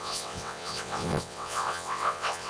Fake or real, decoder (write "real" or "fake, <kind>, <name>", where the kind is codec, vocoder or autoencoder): fake, vocoder, WaveNeXt